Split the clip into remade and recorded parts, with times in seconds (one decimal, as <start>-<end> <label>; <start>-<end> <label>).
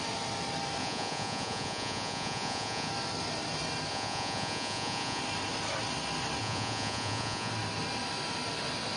0.0-0.8 recorded; 0.8-2.9 remade; 2.9-3.9 recorded; 3.9-5.2 remade; 5.2-6.4 recorded; 6.4-7.5 remade; 7.5-9.0 recorded